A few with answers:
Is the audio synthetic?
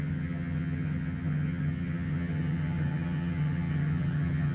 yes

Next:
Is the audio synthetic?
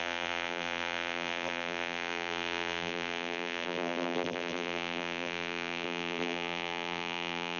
yes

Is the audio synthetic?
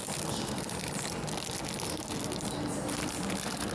no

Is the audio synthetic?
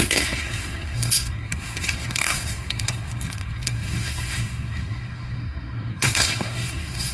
yes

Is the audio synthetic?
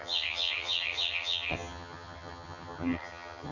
yes